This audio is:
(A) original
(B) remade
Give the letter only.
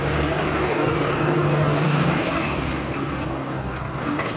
B